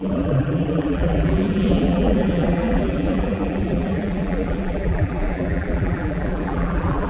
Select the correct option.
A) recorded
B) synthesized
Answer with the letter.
B